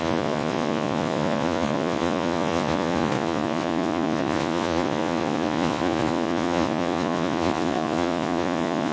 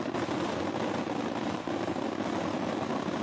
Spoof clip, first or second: first